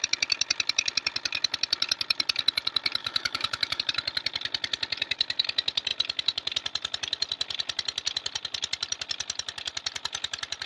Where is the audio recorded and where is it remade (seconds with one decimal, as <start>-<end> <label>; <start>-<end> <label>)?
0.0-3.0 recorded; 3.0-3.8 remade; 3.8-10.7 recorded